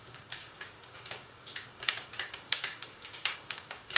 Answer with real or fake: fake